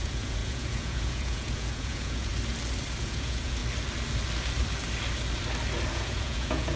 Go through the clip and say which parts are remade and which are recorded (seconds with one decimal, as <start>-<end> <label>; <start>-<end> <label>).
0.0-2.3 remade; 2.3-3.0 recorded; 3.0-3.6 remade; 3.6-5.9 recorded; 5.9-6.8 remade